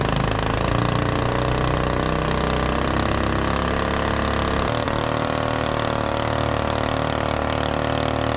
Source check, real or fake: real